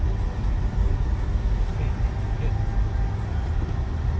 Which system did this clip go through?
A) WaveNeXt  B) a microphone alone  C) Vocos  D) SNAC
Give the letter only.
B